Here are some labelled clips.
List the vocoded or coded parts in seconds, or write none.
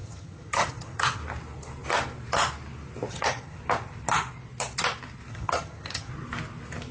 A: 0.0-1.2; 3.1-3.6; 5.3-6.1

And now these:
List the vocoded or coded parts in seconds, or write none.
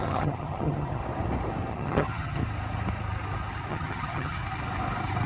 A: 0.0-1.0; 1.7-2.4; 3.7-4.4